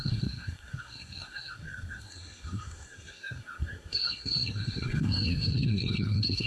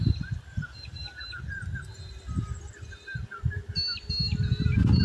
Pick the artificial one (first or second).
first